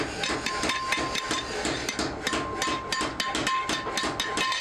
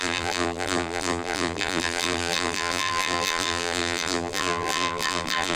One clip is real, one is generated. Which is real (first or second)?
first